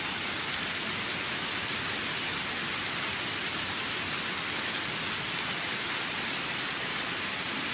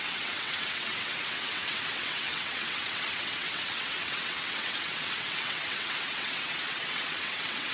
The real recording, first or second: first